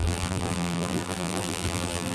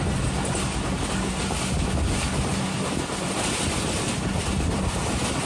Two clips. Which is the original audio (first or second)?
second